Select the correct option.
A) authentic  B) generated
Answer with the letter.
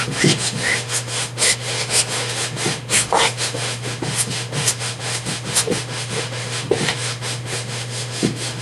B